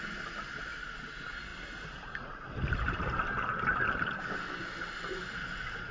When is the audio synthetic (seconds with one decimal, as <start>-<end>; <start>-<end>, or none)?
none